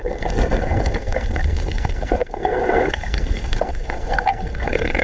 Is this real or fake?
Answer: fake